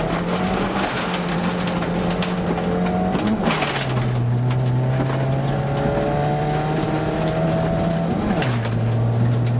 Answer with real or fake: real